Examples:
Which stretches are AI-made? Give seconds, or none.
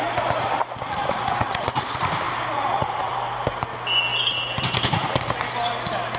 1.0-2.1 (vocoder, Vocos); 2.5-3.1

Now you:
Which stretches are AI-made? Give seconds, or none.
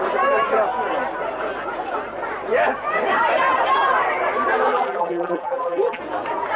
4.7-6.0 (vocoder, BigVGAN v2)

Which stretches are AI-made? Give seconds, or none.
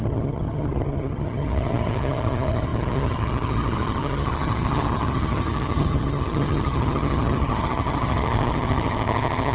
0.0-9.5 (vocoder, HiFi-GAN)